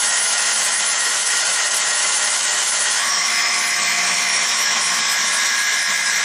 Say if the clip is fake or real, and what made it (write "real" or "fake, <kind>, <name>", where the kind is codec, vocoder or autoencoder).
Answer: fake, autoencoder, DAC-VAE